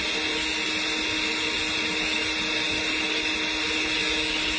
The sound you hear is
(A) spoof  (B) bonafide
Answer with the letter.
B